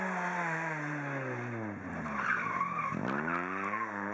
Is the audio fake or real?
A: real